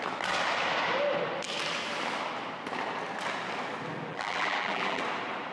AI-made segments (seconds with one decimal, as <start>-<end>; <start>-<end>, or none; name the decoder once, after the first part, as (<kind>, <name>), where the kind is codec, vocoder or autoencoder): 4.1-5.0 (vocoder, BigVGAN v2)